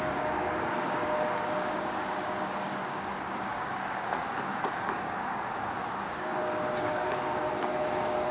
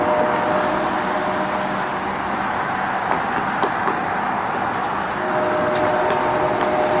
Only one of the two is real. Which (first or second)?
second